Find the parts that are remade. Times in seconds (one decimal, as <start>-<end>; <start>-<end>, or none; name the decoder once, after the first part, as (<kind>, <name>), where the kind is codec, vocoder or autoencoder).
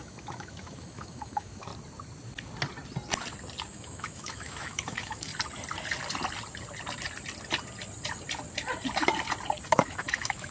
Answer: 0.0-1.7 (autoencoder, DAC-VAE); 3.7-5.3; 9.7-10.5